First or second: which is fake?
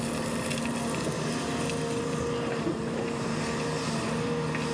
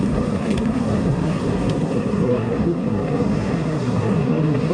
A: second